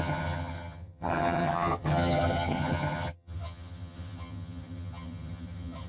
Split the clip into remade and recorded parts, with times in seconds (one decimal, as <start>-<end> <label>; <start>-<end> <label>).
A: 0.0-5.9 remade